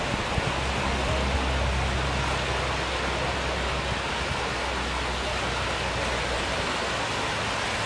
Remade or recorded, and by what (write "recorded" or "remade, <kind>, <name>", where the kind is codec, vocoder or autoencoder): recorded